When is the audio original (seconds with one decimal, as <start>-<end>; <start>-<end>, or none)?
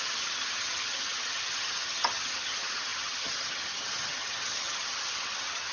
none